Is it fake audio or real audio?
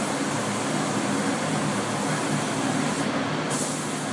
real